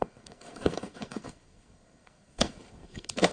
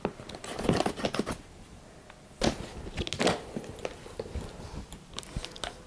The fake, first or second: first